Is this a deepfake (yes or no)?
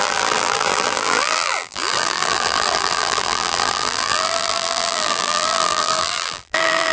yes